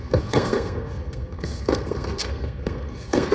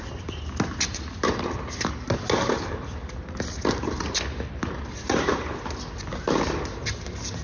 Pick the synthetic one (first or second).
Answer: first